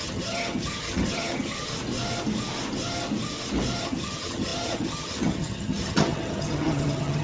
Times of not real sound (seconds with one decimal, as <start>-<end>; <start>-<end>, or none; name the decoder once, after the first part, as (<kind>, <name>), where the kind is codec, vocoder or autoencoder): 0.0-1.7 (vocoder, HiFi-GAN); 3.8-7.2